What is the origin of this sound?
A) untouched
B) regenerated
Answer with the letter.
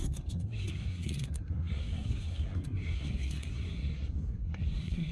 B